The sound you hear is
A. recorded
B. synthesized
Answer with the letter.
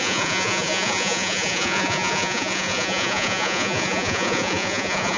B